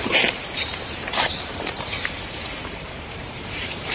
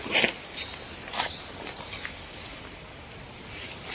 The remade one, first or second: first